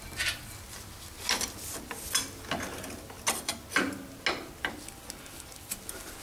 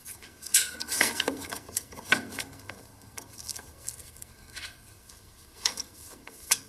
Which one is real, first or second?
first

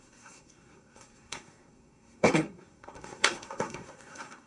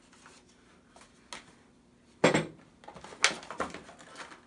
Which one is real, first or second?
second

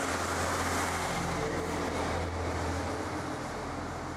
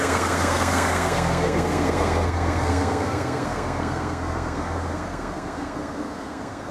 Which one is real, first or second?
first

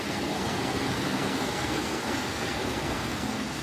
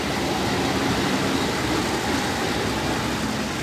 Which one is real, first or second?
second